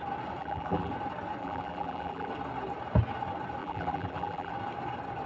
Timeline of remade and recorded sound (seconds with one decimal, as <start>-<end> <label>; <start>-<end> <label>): 0.0-0.4 recorded; 0.4-0.9 remade; 0.9-1.4 recorded; 1.4-2.3 remade; 2.3-3.6 recorded; 3.6-4.5 remade; 4.5-5.3 recorded